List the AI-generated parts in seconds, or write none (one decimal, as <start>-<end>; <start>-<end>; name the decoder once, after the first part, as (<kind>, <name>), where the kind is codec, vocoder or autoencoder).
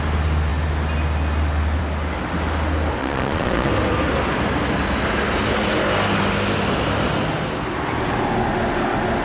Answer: 3.0-3.7 (vocoder, Vocos)